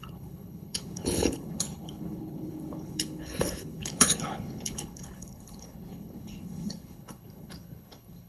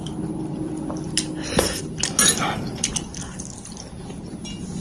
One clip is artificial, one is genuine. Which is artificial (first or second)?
first